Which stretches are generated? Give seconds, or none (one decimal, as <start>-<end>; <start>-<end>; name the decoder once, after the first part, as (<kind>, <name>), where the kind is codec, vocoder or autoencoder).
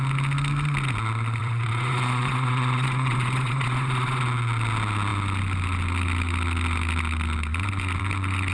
1.4-4.2 (vocoder, Vocos)